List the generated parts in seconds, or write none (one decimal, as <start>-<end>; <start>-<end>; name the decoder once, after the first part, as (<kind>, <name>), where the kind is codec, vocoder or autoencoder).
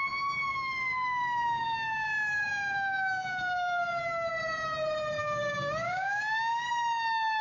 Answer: 0.5-4.3 (codec, DAC); 5.2-6.7